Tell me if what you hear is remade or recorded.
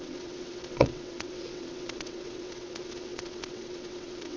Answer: remade